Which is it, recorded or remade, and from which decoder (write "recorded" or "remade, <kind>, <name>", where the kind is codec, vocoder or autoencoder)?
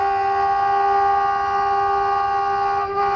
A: recorded